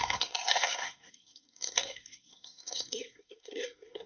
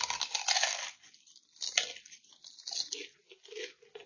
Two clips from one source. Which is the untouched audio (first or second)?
second